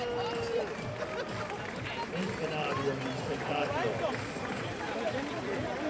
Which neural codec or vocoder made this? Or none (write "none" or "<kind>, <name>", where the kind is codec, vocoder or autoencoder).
none